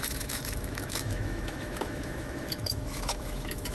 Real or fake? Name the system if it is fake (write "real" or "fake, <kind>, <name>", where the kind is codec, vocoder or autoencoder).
fake, autoencoder, DAC-VAE